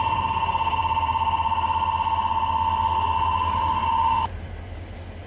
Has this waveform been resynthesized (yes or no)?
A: no